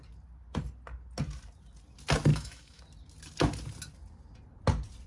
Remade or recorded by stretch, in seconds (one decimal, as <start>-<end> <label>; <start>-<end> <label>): 0.0-2.3 recorded; 2.3-2.8 remade; 2.8-5.1 recorded